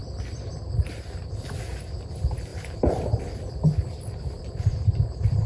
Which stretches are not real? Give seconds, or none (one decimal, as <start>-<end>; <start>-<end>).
2.5-3.2; 4.4-5.5